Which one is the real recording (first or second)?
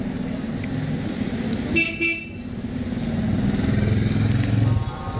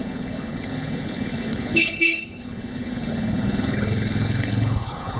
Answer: first